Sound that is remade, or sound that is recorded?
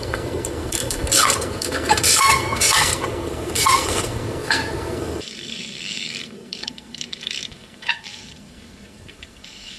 remade